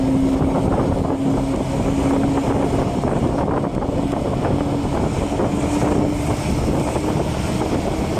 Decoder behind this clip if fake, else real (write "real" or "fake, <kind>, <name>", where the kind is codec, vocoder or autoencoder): real